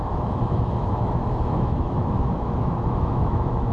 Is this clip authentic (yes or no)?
no